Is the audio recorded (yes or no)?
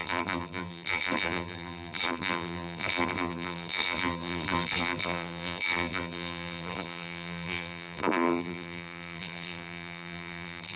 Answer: no